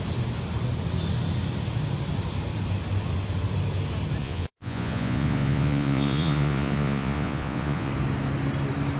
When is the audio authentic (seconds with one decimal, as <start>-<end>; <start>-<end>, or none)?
0.0-4.2; 7.9-9.0